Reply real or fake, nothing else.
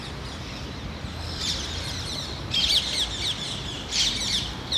real